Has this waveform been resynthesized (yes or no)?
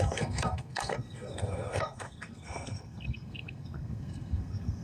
yes